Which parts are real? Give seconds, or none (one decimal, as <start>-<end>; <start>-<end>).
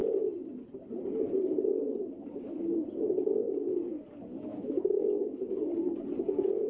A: 0.0-4.5; 5.6-6.7